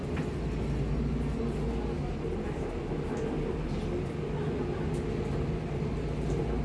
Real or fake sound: real